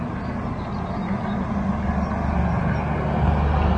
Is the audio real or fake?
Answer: real